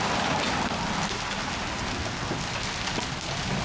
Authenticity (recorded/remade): recorded